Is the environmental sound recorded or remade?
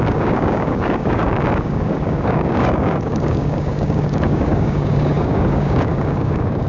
remade